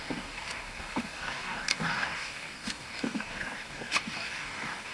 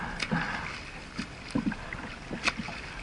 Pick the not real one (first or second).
first